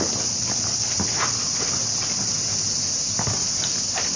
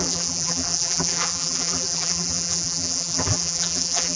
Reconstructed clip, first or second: second